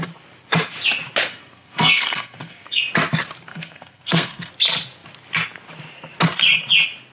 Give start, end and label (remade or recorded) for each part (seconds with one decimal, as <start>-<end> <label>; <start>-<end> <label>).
0.0-1.3 recorded; 1.3-2.8 remade; 2.8-3.5 recorded; 3.5-4.5 remade; 4.5-7.1 recorded